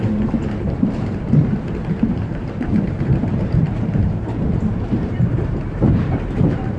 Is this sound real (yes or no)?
no